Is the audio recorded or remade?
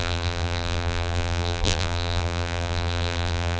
remade